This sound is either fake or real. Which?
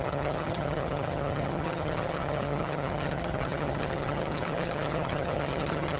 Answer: fake